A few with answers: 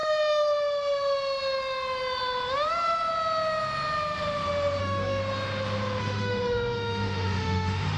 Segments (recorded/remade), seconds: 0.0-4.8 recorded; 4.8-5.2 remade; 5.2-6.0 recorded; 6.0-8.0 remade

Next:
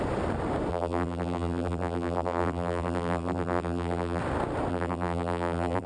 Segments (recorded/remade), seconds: 0.0-0.7 recorded; 0.7-4.2 remade; 4.2-4.7 recorded; 4.7-5.9 remade

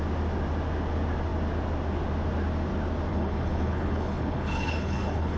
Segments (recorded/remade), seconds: 0.0-3.1 recorded; 3.1-5.4 remade

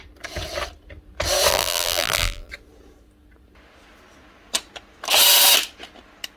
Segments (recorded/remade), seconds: 0.0-1.5 recorded; 1.5-2.5 remade; 2.5-6.4 recorded